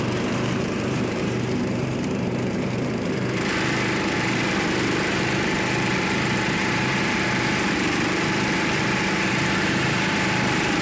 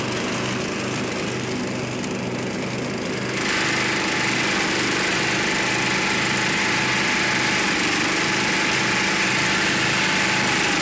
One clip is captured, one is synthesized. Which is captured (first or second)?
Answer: second